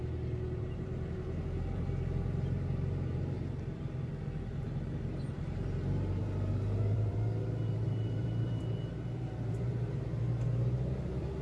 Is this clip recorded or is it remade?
remade